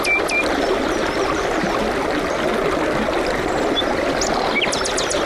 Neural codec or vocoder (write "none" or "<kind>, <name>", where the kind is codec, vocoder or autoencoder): none